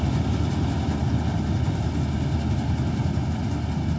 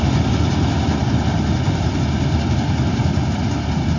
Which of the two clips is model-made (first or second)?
second